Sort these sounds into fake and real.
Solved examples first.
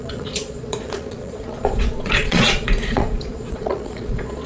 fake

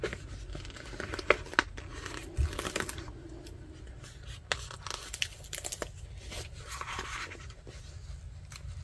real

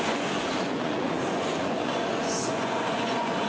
fake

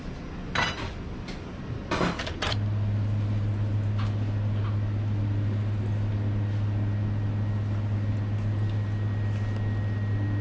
real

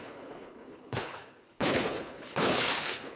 fake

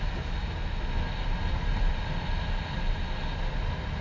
real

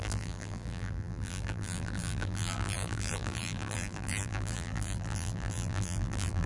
fake